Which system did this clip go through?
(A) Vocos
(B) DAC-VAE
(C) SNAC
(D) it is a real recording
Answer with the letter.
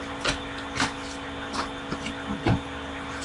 D